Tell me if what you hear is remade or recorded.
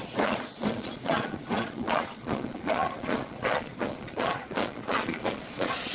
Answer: remade